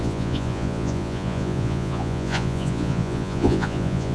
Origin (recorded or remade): remade